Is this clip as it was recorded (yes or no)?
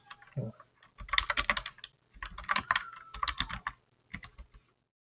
yes